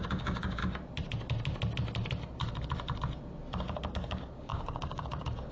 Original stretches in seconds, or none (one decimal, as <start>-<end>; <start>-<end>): 0.6-3.9

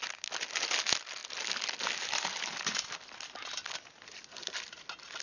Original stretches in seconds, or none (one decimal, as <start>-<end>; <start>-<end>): 0.0-5.2

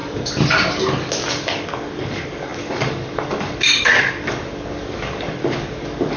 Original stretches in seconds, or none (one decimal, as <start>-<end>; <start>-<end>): 0.0-1.3

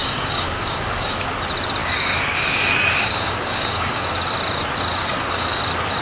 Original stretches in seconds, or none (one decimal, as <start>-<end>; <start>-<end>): 1.3-1.8; 4.1-5.0; 5.6-6.0

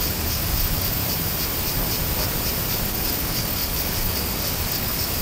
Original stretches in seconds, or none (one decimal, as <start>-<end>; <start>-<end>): 1.0-2.7

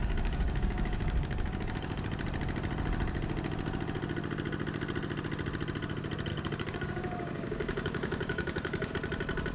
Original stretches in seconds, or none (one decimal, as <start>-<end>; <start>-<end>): 2.0-6.3; 8.9-9.5

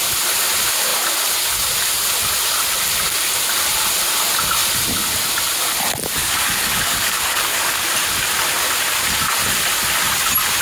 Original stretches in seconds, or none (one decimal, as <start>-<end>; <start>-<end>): 0.0-6.2; 7.8-10.6